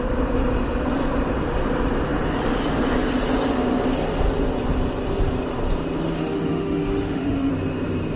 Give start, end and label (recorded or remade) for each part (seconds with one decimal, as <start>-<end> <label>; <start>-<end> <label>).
0.0-6.2 recorded; 6.2-7.5 remade; 7.5-8.2 recorded

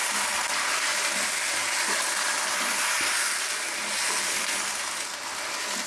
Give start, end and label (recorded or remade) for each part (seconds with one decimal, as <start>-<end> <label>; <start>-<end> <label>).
0.0-5.9 recorded

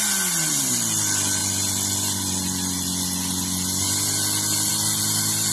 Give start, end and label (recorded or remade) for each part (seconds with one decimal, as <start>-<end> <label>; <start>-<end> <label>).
0.0-5.5 recorded

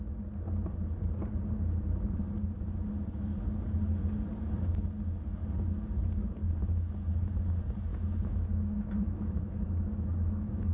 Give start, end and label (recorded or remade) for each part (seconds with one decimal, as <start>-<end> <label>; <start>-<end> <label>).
0.0-7.9 recorded; 7.9-10.7 remade

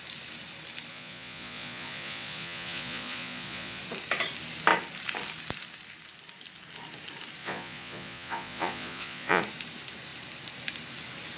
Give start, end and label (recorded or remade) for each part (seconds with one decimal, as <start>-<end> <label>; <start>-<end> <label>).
0.0-0.9 recorded; 0.9-3.8 remade; 3.8-7.4 recorded; 7.4-9.4 remade; 9.4-11.4 recorded

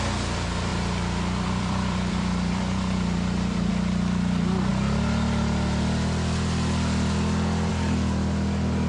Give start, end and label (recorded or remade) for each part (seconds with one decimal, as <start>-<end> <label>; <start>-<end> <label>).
0.0-0.7 recorded; 0.7-3.7 remade; 3.7-8.9 recorded

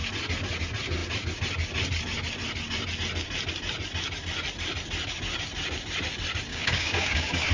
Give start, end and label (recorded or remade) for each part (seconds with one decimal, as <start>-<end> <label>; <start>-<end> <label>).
0.0-6.5 recorded; 6.5-7.5 remade

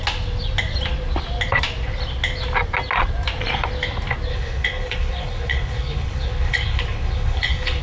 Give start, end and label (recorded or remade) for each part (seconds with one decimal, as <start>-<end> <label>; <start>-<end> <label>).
0.0-4.3 recorded; 4.3-7.8 remade